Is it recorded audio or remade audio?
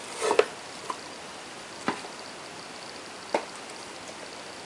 recorded